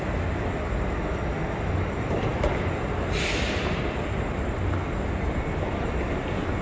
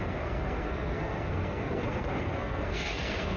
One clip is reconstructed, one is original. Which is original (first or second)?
first